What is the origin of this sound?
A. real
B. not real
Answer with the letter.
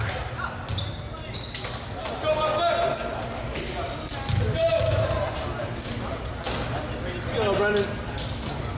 A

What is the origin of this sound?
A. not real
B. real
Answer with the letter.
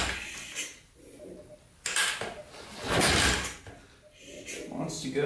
B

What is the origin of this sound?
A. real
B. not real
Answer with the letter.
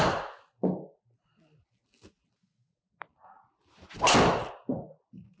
A